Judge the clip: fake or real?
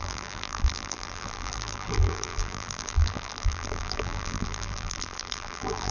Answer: fake